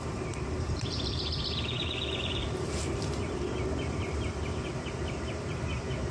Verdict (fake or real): fake